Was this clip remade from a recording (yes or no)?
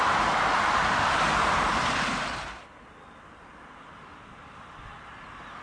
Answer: no